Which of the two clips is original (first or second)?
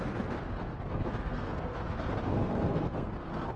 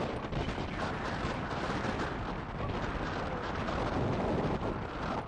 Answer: second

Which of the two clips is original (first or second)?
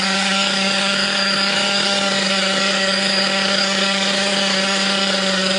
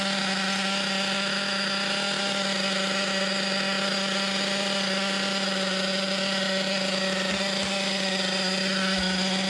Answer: second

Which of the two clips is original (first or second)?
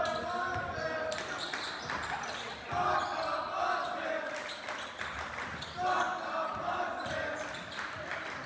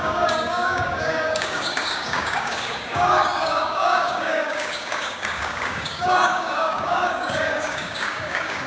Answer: first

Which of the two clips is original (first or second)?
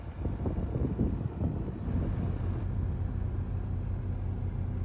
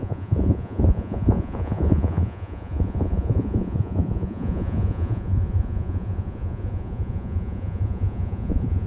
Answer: first